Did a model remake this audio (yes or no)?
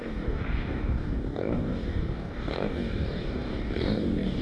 yes